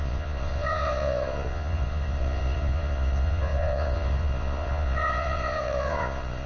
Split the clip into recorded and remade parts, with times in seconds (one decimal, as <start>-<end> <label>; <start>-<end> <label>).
0.0-6.5 remade

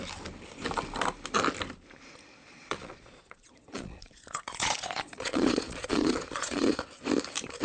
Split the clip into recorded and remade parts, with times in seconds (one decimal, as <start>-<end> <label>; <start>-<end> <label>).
0.0-2.4 recorded; 2.4-6.8 remade; 6.8-7.6 recorded

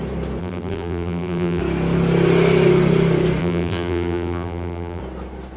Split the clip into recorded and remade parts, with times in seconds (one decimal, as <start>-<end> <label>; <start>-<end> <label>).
0.0-0.4 recorded; 0.4-1.6 remade; 1.6-3.4 recorded; 3.4-5.0 remade; 5.0-5.6 recorded

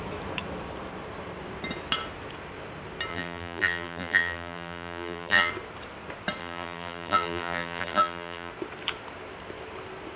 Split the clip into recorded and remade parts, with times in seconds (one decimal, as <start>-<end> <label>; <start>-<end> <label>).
0.0-3.1 recorded; 3.1-5.5 remade; 5.5-6.4 recorded; 6.4-8.5 remade; 8.5-10.2 recorded

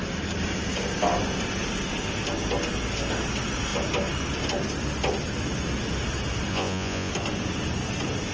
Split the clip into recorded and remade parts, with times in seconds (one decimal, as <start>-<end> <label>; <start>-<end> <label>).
0.0-6.5 recorded; 6.5-7.1 remade; 7.1-8.3 recorded

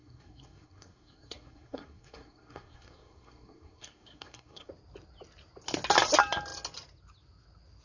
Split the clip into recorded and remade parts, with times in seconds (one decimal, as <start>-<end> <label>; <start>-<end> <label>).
0.0-4.7 remade; 4.7-7.8 recorded